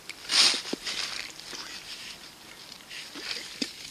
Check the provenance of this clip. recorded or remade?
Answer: remade